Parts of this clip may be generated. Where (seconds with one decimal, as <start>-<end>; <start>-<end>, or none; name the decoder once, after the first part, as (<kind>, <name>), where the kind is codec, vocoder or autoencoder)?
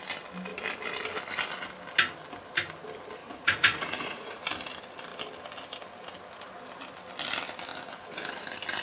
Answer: 3.2-4.4 (vocoder, Vocos)